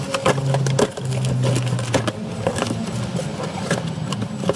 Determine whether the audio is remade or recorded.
recorded